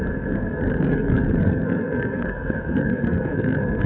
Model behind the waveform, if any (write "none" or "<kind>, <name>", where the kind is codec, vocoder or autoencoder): codec, SNAC